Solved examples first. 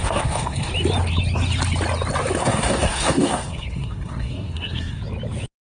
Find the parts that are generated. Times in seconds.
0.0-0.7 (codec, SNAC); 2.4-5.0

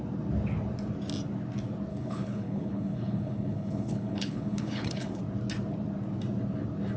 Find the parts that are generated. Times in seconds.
1.9-5.2 (codec, HILCodec)

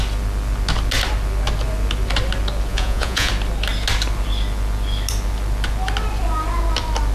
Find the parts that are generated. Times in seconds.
2.7-3.3 (vocoder, Vocos)

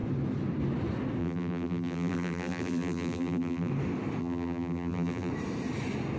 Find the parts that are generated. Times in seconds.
1.2-3.7 (vocoder, BigVGAN v2); 4.2-5.3

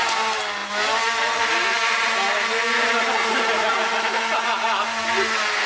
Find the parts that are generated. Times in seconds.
none